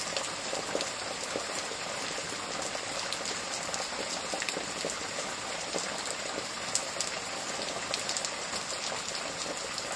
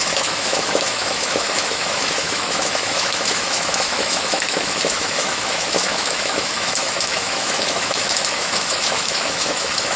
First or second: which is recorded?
first